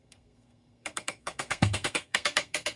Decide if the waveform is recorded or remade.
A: remade